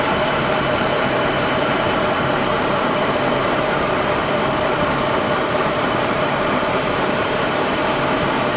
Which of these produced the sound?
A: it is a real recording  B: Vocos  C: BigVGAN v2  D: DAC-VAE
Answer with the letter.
C